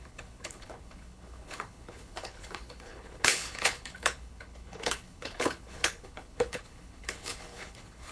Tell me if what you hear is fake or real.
fake